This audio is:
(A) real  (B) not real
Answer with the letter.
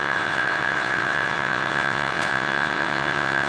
B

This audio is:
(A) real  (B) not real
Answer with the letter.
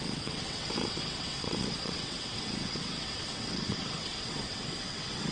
B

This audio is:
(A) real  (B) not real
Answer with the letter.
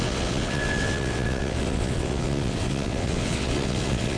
B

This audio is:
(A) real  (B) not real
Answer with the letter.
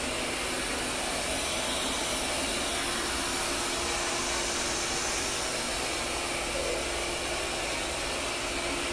A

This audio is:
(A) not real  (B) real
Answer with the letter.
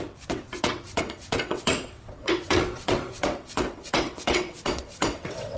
A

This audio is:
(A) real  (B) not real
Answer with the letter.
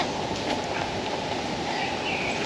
A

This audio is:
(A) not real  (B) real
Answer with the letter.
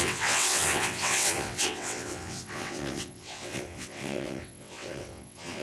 A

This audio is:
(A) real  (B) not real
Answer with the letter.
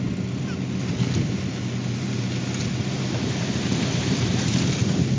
A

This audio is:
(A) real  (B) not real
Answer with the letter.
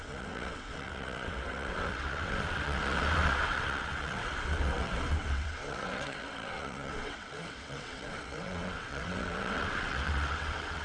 B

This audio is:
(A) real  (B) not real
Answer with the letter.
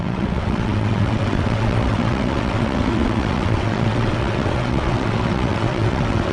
B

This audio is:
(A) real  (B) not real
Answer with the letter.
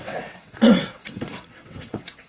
B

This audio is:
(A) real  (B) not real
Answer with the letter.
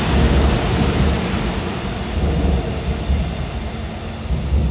A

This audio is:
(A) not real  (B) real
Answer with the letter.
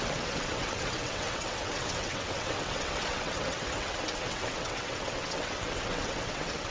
A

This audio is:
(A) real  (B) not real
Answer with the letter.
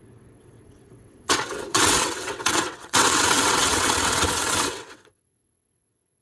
B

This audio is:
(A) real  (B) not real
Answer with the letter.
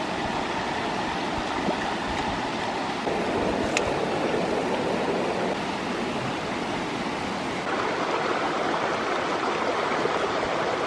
A